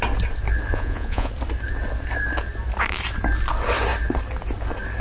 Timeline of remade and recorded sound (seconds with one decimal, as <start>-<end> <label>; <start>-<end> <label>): 0.0-0.7 recorded; 0.7-1.3 remade; 1.3-5.0 recorded